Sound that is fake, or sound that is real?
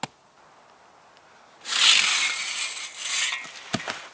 real